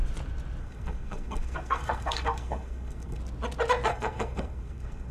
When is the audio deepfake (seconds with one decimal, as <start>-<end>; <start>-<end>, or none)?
0.6-3.2; 3.9-5.1